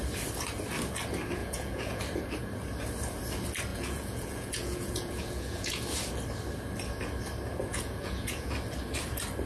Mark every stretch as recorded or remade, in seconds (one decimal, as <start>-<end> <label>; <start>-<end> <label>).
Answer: 0.0-1.4 recorded; 1.4-2.0 remade; 2.0-3.7 recorded; 3.7-5.8 remade; 5.8-7.7 recorded; 7.7-8.5 remade; 8.5-9.5 recorded